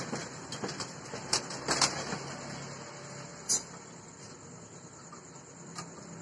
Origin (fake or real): real